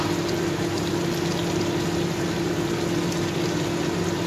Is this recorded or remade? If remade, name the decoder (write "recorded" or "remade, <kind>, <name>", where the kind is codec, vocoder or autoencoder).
recorded